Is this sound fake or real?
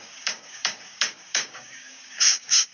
fake